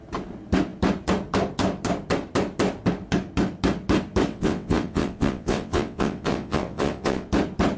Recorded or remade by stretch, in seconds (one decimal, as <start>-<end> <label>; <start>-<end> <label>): 0.0-4.3 recorded; 4.3-7.3 remade; 7.3-7.8 recorded